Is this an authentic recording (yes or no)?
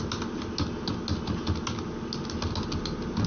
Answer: yes